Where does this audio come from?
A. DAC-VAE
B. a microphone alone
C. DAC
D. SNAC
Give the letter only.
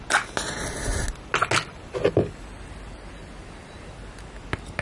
B